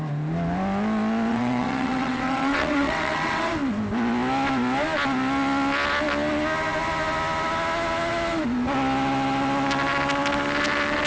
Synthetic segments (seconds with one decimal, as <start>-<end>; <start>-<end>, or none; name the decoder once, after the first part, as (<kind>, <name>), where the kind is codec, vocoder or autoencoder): 1.3-3.5 (vocoder, WaveNeXt)